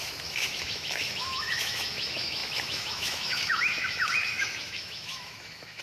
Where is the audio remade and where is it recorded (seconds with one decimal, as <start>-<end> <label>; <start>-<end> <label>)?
0.0-5.8 remade